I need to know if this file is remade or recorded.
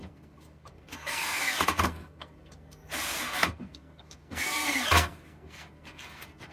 remade